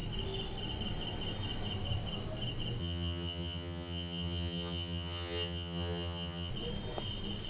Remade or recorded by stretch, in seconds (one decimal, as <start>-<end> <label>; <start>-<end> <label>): 0.0-2.8 recorded; 2.8-6.5 remade; 6.5-7.5 recorded